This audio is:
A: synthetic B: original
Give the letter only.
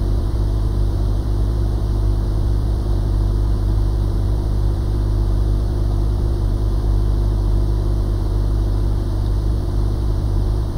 A